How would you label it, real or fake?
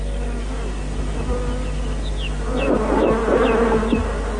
real